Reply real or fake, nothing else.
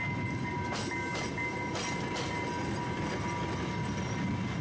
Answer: real